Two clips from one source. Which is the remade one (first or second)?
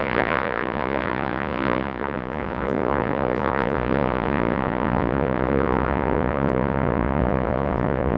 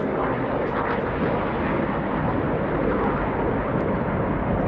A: first